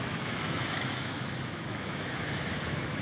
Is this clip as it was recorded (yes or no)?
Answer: no